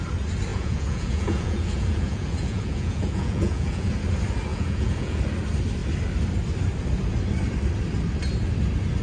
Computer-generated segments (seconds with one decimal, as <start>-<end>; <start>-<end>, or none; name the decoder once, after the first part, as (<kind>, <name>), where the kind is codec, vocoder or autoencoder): 0.5-3.9 (vocoder, Vocos); 4.5-5.2